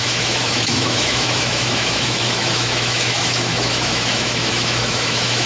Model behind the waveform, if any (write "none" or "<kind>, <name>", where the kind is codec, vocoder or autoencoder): autoencoder, DAC-VAE